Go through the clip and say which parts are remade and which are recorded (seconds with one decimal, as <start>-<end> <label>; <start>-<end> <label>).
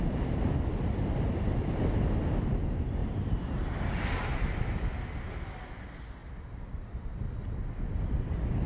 0.0-3.0 recorded; 3.0-4.8 remade; 4.8-8.7 recorded